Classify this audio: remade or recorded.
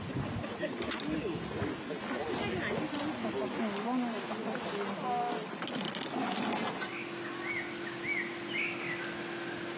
recorded